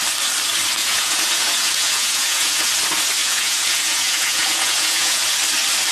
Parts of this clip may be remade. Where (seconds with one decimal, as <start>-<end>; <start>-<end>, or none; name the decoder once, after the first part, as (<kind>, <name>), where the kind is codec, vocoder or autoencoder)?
0.8-2.7 (vocoder, Vocos); 3.2-5.2